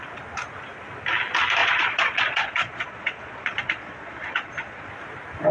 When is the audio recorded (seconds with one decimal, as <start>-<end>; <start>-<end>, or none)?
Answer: 0.0-1.6; 4.9-5.5